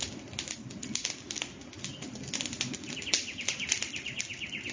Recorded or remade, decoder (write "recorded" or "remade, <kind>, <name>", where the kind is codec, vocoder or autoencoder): recorded